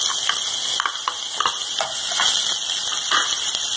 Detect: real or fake real